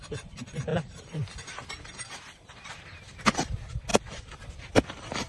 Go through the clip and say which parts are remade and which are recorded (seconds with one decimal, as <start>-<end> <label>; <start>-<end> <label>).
0.0-0.7 recorded; 0.7-2.6 remade; 2.6-5.3 recorded

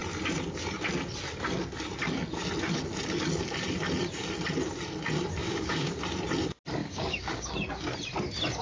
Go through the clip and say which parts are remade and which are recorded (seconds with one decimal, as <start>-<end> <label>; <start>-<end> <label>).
0.0-5.4 recorded; 5.4-5.9 remade; 5.9-6.8 recorded; 6.8-7.5 remade; 7.5-8.6 recorded

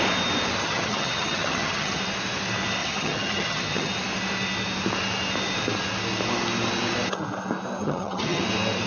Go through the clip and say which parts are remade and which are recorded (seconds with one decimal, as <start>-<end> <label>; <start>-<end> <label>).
0.0-0.6 recorded; 0.6-2.0 remade; 2.0-2.8 recorded; 2.8-3.9 remade; 3.9-7.8 recorded; 7.8-8.4 remade; 8.4-8.9 recorded

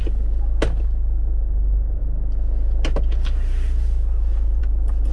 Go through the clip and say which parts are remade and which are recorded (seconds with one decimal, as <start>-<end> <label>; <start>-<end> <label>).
0.0-5.1 recorded

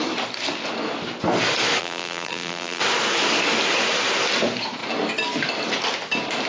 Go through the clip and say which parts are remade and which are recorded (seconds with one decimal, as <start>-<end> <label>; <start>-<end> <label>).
0.0-1.8 recorded; 1.8-2.8 remade; 2.8-6.5 recorded

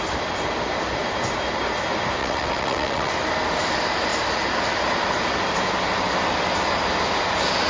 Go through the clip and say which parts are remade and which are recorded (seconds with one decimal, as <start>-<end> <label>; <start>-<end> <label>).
0.0-2.2 recorded; 2.2-3.1 remade; 3.1-7.7 recorded

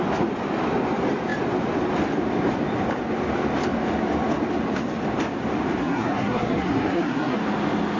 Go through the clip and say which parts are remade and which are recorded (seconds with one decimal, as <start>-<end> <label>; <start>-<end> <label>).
0.0-5.8 recorded; 5.8-7.4 remade; 7.4-8.0 recorded

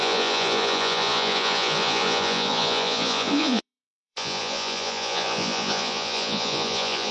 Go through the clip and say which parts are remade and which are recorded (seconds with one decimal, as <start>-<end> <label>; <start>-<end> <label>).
0.0-7.1 remade